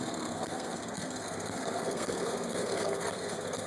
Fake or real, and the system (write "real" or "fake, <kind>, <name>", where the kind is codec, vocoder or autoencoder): fake, codec, SNAC